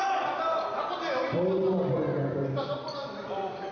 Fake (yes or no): no